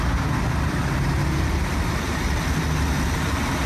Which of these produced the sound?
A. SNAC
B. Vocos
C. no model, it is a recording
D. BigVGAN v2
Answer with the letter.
C